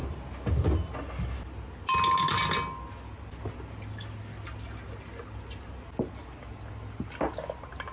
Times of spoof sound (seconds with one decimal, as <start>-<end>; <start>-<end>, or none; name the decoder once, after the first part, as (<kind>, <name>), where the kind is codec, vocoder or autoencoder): none